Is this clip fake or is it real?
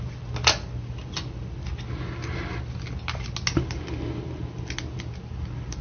real